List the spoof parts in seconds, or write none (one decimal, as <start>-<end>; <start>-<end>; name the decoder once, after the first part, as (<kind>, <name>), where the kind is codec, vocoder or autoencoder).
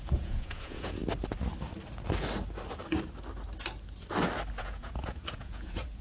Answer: 0.0-1.0 (vocoder, Vocos); 4.6-6.0